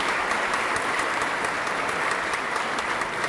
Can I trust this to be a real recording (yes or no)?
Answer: no